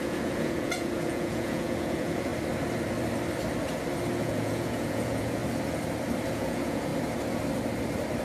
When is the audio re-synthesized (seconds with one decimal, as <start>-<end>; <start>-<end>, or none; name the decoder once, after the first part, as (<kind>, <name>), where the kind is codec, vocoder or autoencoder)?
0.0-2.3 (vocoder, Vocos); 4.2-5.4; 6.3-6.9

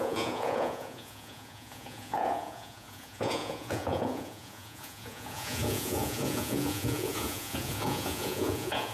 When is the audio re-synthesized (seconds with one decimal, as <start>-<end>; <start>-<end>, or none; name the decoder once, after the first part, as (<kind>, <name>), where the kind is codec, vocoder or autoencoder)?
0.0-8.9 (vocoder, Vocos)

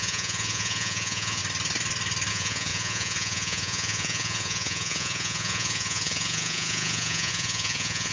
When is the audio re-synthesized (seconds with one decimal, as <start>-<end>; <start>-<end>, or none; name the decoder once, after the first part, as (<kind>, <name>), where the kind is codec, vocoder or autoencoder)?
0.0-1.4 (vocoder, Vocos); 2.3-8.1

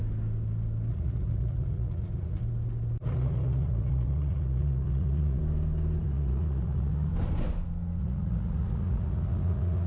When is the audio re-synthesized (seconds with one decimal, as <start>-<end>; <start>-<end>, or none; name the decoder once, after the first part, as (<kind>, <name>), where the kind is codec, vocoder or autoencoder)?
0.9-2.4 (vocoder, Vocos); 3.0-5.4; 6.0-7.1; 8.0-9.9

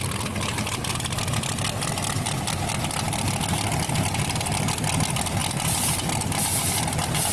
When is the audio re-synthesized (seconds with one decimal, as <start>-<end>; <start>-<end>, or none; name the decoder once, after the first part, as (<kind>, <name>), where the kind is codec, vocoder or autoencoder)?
none

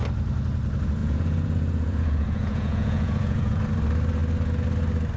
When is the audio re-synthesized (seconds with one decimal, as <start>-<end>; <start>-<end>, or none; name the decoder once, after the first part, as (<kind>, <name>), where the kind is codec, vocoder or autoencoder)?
1.0-3.6 (vocoder, Vocos)